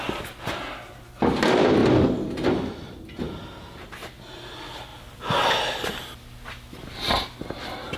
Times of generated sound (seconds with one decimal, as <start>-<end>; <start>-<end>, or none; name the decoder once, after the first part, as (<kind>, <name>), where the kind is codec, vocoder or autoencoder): 1.8-3.2 (vocoder, BigVGAN v2); 4.9-5.5